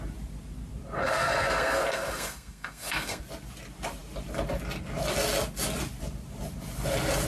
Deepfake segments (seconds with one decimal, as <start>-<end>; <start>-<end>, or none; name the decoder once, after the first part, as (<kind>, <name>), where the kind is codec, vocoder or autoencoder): 1.0-3.2 (codec, SNAC)